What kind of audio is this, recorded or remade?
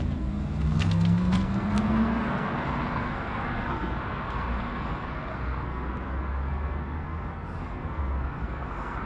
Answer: remade